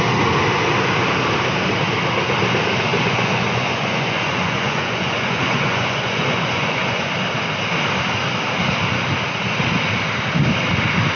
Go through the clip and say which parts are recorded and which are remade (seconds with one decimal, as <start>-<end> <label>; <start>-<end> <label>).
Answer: 0.0-2.9 recorded; 2.9-7.1 remade; 7.1-11.2 recorded